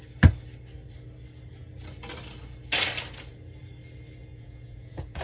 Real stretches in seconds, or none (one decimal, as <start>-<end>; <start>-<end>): 0.0-4.3